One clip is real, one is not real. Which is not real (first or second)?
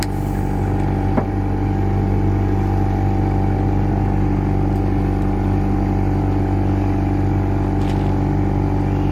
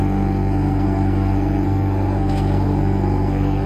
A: second